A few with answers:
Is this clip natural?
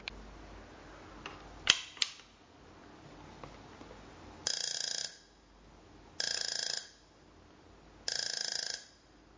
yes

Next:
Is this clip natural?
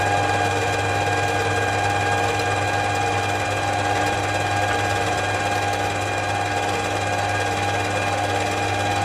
yes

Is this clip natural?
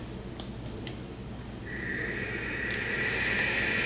yes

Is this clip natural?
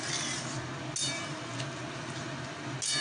yes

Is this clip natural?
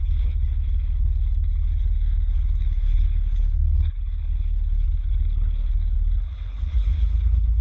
no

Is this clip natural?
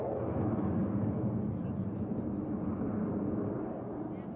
yes